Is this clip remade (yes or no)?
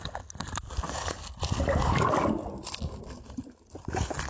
no